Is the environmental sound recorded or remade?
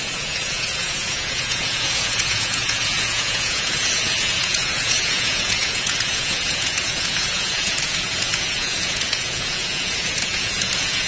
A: remade